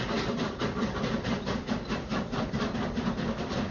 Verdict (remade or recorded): recorded